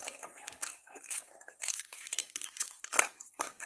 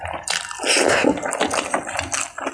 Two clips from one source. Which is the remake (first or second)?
first